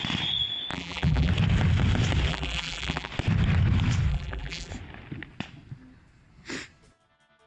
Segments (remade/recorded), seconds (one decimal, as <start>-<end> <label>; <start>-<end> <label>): 0.0-0.7 recorded; 0.7-1.3 remade; 1.3-2.3 recorded; 2.3-3.1 remade; 3.1-4.1 recorded; 4.1-4.7 remade; 4.7-7.5 recorded